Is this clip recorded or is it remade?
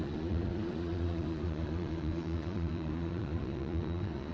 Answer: remade